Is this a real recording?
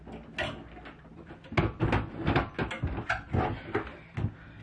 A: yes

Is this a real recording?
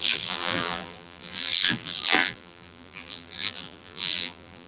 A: no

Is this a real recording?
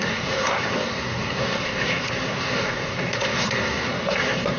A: no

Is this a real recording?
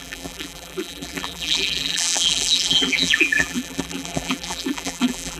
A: no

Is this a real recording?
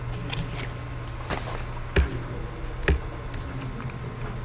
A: yes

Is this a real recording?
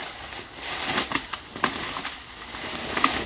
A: yes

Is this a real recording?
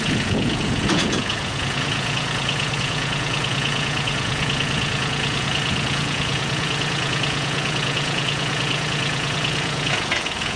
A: no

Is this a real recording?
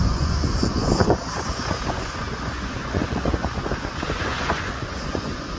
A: no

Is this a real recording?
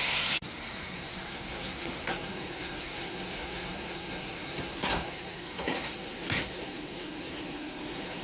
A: no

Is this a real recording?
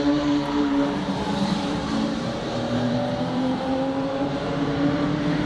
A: no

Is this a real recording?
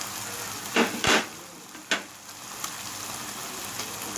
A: yes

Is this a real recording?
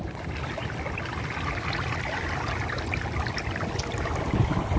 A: yes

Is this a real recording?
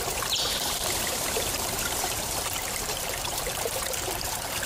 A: no